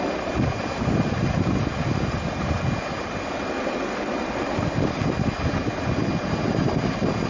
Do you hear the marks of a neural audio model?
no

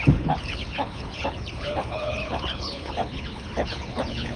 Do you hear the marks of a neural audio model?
yes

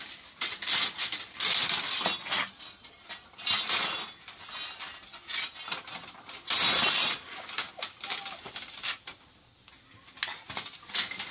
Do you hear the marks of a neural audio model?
no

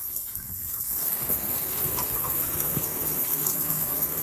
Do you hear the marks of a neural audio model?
yes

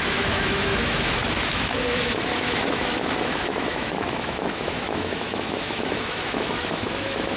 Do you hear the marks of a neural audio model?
yes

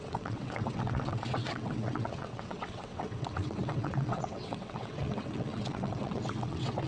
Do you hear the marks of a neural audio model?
yes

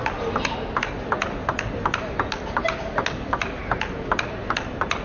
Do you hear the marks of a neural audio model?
no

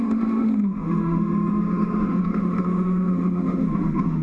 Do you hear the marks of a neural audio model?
yes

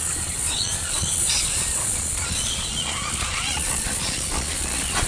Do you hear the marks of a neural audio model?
yes